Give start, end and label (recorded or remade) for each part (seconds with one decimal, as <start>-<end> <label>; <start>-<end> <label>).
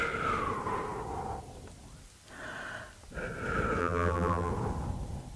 0.0-3.8 recorded; 3.8-4.5 remade; 4.5-5.4 recorded